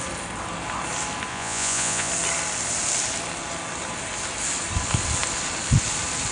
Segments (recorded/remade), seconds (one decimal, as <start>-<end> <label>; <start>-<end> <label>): 0.0-1.3 recorded; 1.3-2.1 remade; 2.1-6.3 recorded